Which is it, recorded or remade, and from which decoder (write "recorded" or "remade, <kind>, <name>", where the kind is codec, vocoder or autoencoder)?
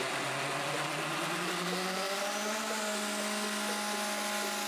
recorded